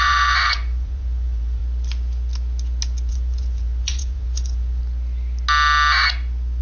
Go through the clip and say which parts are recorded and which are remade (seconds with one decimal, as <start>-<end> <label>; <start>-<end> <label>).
0.0-1.6 remade; 1.6-3.1 recorded; 3.1-4.8 remade; 4.8-6.6 recorded